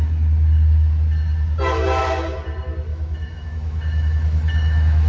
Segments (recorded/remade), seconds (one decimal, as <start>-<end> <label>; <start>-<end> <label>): 0.0-2.9 recorded; 2.9-5.1 remade